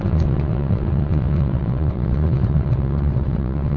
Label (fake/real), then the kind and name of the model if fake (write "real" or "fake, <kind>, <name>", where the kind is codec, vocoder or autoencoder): fake, vocoder, WaveNeXt